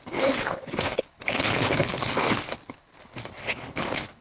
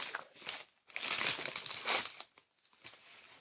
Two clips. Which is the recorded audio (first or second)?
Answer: second